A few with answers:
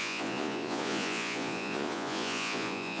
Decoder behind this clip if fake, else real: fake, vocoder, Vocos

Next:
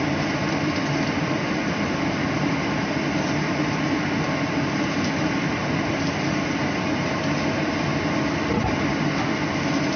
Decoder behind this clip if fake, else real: real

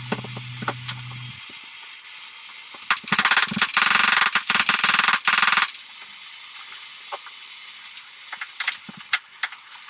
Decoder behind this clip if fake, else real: real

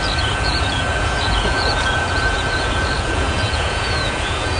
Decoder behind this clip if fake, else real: fake, vocoder, Vocos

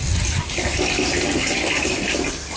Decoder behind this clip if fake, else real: real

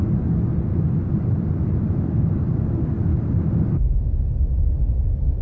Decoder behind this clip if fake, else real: real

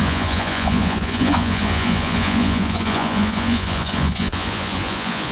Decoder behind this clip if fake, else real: fake, vocoder, Vocos